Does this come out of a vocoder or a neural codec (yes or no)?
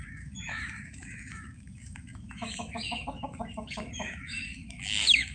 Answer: yes